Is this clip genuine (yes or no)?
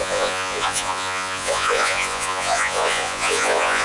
no